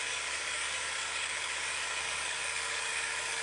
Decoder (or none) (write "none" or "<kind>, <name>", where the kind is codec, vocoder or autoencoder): codec, DAC